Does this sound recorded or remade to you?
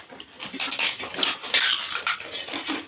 recorded